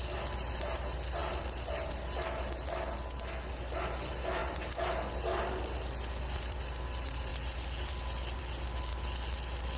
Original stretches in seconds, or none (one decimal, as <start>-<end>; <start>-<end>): 0.0-9.8